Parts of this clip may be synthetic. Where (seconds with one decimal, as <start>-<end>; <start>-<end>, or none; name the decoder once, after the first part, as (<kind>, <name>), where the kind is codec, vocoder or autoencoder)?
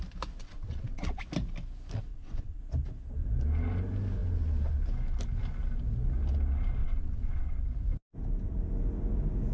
0.4-1.2 (vocoder, WaveNeXt); 2.1-2.6; 6.8-7.6